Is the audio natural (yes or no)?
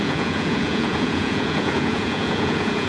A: no